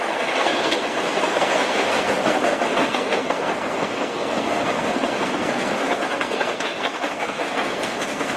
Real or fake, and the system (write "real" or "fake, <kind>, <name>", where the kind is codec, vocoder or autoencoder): fake, codec, SNAC